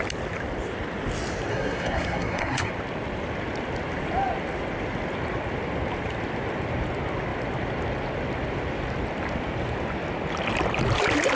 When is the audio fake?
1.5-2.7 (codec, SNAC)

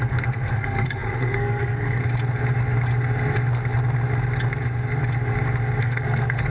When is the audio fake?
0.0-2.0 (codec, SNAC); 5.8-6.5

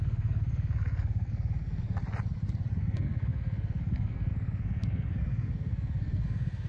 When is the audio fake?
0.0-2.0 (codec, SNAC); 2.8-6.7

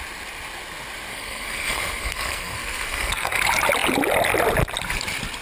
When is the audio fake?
1.1-3.4 (codec, SNAC)